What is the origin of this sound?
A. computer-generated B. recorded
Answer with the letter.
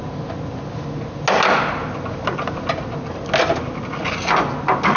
B